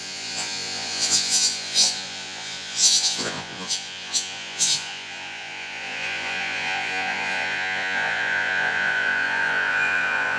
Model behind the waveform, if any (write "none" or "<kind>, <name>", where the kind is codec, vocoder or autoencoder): vocoder, Vocos